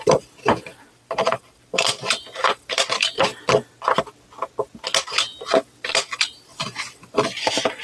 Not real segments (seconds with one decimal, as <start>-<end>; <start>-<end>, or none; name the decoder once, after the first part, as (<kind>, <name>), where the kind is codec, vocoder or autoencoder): 0.0-3.3 (vocoder, BigVGAN v2); 5.1-7.8